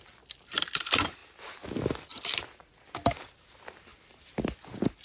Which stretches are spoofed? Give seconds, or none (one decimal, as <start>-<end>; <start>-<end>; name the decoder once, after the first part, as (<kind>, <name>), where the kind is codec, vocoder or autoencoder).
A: none